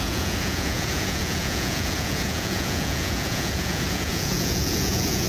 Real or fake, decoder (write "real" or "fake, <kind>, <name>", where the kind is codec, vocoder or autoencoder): fake, vocoder, Vocos